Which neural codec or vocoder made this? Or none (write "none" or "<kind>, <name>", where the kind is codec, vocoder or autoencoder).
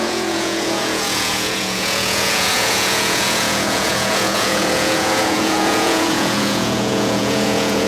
vocoder, Vocos